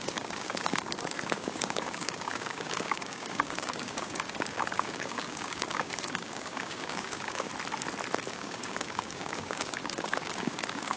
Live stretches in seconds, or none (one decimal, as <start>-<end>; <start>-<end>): 7.5-8.3